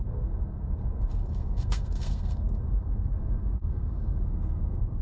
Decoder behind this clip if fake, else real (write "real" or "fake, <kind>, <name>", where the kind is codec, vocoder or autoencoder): fake, codec, SNAC